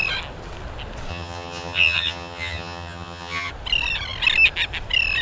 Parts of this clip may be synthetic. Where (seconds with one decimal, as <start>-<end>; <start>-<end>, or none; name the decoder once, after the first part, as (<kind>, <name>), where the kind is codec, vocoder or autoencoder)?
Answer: 1.1-3.5 (vocoder, HiFi-GAN)